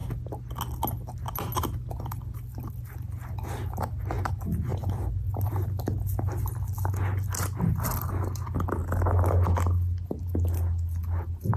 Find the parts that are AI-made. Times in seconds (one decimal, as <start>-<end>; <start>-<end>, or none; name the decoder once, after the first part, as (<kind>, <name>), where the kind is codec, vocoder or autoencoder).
none